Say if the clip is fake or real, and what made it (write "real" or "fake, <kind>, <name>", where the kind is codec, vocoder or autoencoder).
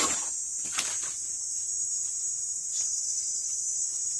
fake, vocoder, BigVGAN v2